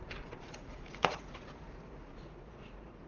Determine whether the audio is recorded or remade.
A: remade